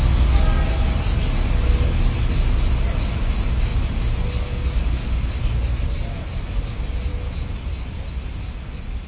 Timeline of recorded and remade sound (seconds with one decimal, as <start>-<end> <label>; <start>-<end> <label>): 0.0-9.1 recorded